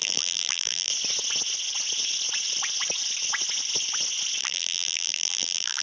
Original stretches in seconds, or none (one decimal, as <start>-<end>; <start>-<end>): 0.9-4.4